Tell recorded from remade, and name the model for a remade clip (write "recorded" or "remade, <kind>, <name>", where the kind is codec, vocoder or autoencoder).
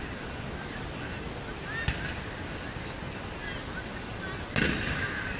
recorded